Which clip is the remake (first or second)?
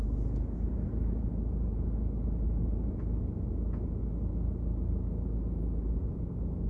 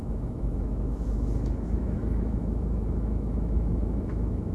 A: second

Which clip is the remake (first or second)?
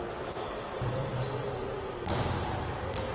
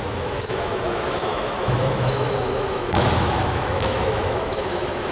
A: second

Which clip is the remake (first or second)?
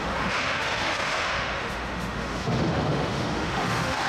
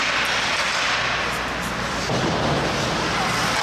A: first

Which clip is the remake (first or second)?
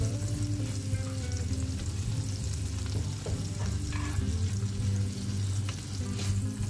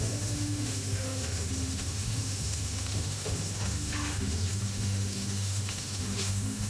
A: second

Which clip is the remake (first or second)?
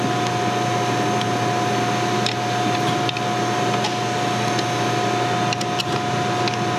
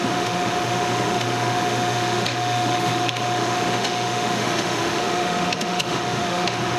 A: second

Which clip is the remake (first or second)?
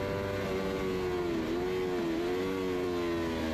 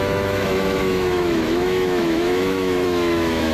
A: second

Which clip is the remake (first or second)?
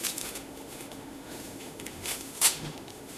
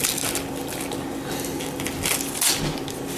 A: first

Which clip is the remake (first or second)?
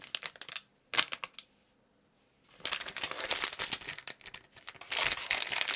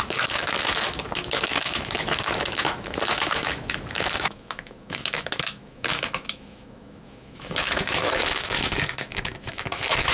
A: second